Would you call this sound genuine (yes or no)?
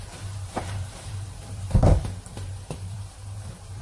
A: no